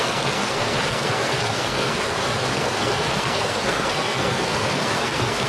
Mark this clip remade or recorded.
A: remade